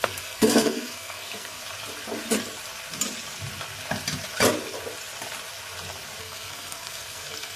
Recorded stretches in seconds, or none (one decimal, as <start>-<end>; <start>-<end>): 1.6-6.2